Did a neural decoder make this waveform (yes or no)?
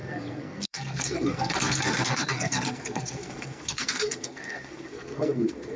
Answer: yes